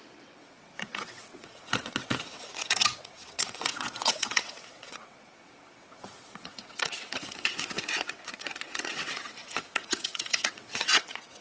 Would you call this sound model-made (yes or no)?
yes